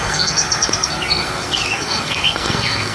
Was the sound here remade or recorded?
remade